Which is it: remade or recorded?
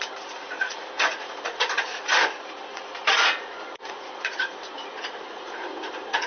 remade